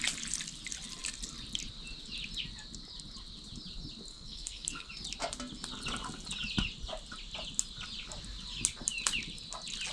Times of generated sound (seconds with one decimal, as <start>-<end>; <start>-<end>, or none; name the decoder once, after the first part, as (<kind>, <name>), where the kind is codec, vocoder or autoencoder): 4.1-4.9 (codec, SNAC)